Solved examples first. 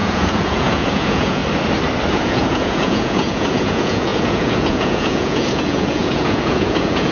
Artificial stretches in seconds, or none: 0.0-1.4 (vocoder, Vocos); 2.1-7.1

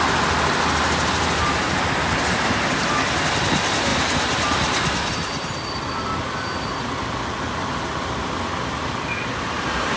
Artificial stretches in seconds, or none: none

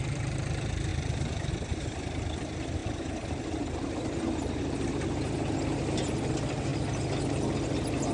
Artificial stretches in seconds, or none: none